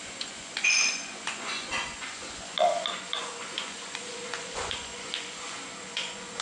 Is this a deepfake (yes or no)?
yes